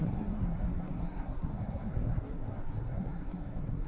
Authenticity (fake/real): fake